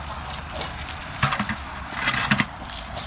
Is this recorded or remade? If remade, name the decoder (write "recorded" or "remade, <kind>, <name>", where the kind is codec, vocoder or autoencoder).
recorded